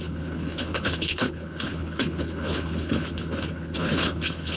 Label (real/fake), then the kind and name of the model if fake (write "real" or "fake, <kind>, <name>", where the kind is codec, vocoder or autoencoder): fake, codec, HILCodec